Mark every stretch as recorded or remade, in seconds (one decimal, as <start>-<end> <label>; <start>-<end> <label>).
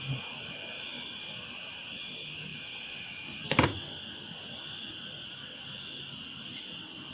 0.0-7.1 recorded